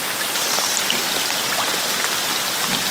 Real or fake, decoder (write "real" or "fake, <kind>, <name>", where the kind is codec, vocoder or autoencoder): real